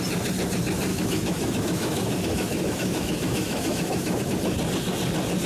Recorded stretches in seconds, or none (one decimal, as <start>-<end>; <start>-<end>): 0.0-0.9; 4.2-5.5